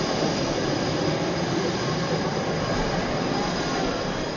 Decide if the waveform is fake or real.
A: fake